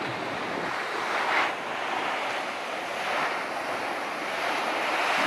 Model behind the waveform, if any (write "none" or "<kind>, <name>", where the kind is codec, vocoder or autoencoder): none